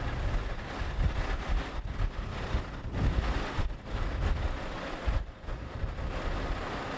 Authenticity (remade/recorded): recorded